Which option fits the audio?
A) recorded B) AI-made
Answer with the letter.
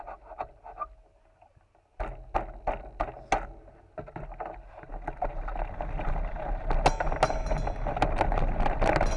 A